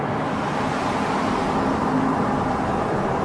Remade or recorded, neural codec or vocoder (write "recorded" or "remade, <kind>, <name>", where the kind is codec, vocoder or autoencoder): recorded